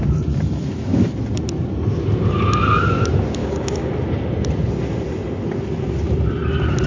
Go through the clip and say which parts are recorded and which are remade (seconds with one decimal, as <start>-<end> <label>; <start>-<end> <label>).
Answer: 0.0-3.4 recorded; 3.4-3.9 remade; 3.9-6.9 recorded